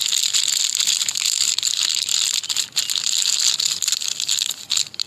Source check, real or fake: real